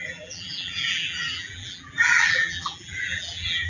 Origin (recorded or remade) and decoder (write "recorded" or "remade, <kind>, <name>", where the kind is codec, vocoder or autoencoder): remade, vocoder, BigVGAN v2